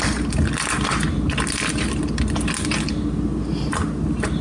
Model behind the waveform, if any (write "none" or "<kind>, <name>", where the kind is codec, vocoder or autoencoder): none